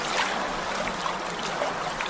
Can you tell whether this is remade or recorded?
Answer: recorded